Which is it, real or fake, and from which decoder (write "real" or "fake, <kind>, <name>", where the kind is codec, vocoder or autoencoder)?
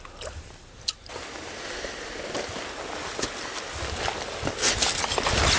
real